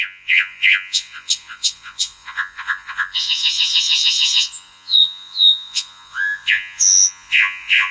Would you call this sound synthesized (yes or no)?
yes